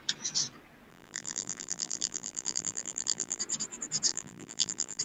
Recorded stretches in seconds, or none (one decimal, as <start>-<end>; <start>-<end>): 0.0-0.9; 3.4-4.1